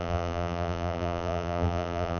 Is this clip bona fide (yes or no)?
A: no